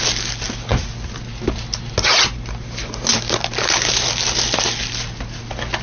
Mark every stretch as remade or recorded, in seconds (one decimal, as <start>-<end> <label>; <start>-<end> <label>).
0.0-5.8 recorded

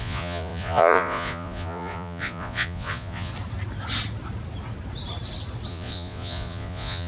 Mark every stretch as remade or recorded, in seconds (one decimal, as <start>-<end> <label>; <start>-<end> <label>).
0.0-3.3 remade; 3.3-5.7 recorded; 5.7-7.1 remade

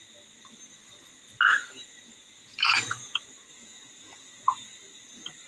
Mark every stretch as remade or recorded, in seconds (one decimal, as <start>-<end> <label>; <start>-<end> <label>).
0.0-1.5 recorded; 1.5-4.8 remade; 4.8-5.5 recorded

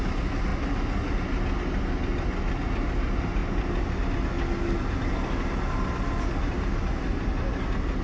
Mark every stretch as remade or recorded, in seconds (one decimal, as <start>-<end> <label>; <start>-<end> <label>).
0.0-8.0 recorded

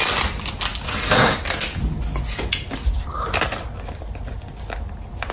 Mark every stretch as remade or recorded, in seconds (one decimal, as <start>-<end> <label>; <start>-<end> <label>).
0.0-5.3 recorded

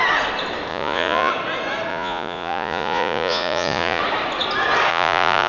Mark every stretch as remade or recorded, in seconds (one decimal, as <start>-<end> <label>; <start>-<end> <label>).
0.0-0.7 recorded; 0.7-1.3 remade; 1.3-1.9 recorded; 1.9-4.0 remade; 4.0-4.9 recorded; 4.9-5.5 remade

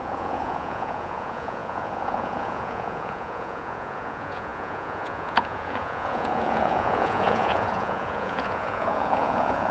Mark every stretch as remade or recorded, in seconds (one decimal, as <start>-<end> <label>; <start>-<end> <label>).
0.0-9.7 remade

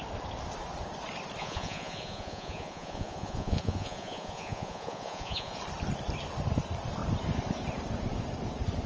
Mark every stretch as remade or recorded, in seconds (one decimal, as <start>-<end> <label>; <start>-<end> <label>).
0.0-1.4 recorded; 1.4-5.6 remade; 5.6-8.9 recorded